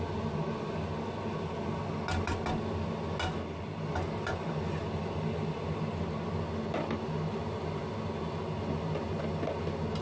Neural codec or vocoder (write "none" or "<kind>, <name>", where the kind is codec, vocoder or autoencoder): none